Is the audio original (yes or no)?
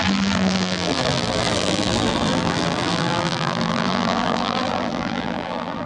no